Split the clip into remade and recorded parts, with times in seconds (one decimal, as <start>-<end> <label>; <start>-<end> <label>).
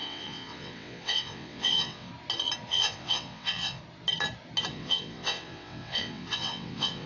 0.0-2.1 remade; 2.1-2.7 recorded; 2.7-3.8 remade; 3.8-4.7 recorded; 4.7-7.1 remade